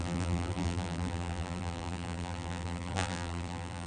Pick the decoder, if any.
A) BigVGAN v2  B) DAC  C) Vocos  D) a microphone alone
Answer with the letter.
A